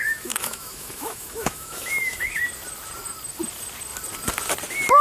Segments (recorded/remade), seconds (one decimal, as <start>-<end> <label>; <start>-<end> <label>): 0.0-2.4 remade; 2.4-5.0 recorded